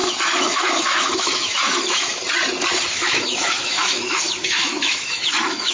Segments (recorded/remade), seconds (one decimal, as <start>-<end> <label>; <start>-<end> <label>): 0.0-2.2 remade; 2.2-2.9 recorded; 2.9-5.7 remade